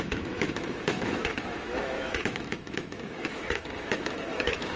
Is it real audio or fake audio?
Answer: fake